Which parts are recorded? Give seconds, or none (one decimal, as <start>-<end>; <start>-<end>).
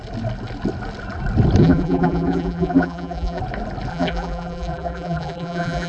0.0-1.6; 3.4-3.9